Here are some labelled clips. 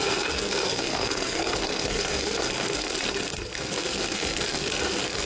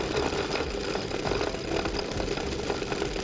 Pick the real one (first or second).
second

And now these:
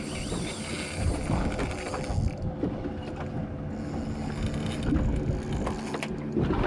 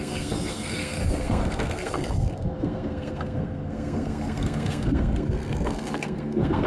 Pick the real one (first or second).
first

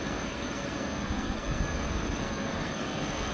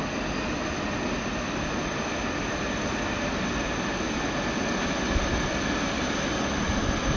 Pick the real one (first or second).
second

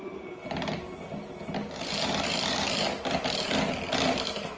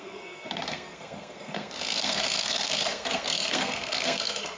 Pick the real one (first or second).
first